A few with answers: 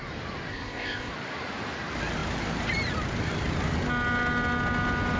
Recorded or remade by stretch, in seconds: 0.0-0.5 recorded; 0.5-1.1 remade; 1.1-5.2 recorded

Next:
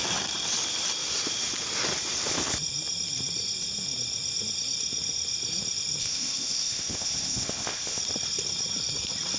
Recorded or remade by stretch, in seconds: 0.0-6.0 recorded; 6.0-8.0 remade; 8.0-9.4 recorded

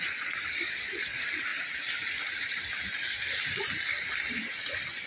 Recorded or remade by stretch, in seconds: 0.0-5.1 recorded

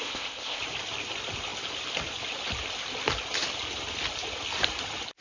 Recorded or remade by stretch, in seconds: 0.0-0.6 remade; 0.6-5.2 recorded

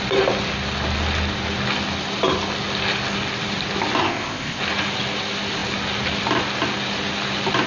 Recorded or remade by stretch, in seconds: 0.0-4.0 recorded; 4.0-4.6 remade; 4.6-7.7 recorded

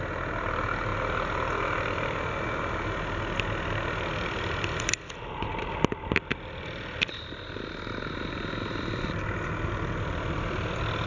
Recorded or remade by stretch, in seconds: 0.0-11.1 recorded

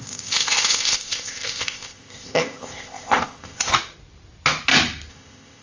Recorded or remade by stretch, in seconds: 0.0-3.7 remade; 3.7-5.1 recorded; 5.1-5.6 remade